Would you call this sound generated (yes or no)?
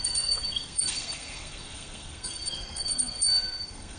yes